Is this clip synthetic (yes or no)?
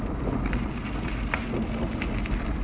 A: no